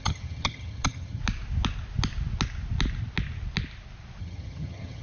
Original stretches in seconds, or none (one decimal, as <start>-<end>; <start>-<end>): 1.2-4.2